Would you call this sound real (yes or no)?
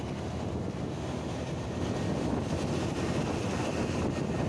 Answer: yes